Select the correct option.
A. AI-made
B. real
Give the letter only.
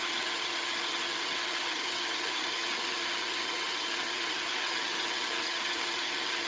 A